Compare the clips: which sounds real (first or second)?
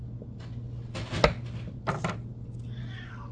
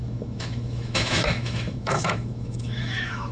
first